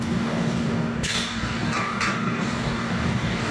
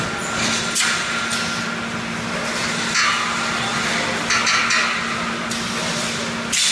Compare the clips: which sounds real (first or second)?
second